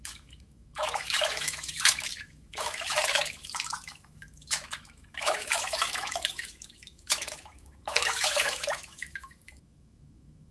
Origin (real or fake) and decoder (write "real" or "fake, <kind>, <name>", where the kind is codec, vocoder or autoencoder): fake, autoencoder, DAC-VAE